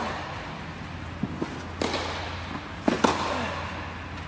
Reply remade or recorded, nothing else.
recorded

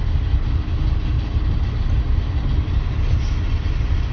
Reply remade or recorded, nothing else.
recorded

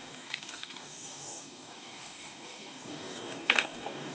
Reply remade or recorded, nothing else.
remade